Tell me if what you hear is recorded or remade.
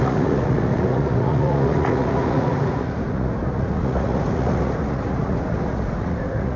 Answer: remade